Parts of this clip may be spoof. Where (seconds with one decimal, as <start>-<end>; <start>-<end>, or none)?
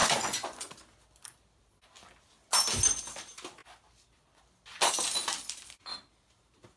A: 0.0-0.7